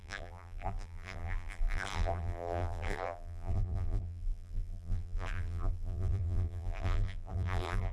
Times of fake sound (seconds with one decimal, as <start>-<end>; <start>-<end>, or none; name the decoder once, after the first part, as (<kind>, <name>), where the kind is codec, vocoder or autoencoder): 0.0-7.9 (vocoder, BigVGAN v2)